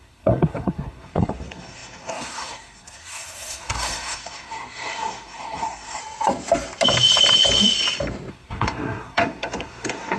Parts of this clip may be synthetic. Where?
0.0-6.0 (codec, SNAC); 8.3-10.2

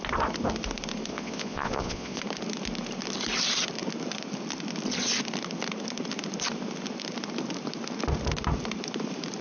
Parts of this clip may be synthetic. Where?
1.1-2.2 (vocoder, Vocos)

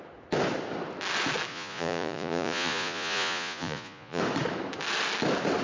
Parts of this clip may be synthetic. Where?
1.5-4.2 (vocoder, Vocos)